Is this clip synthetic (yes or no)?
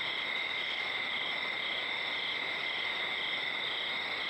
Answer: no